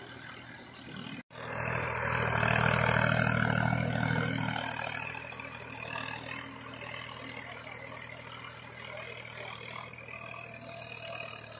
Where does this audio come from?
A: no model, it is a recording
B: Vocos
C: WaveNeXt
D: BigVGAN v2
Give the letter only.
A